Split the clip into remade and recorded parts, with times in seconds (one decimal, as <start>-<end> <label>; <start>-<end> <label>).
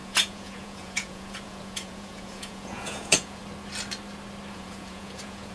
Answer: 0.0-3.4 remade; 3.4-4.5 recorded; 4.5-5.5 remade